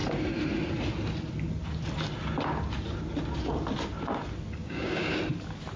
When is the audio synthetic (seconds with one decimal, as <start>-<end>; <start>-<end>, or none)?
4.6-5.2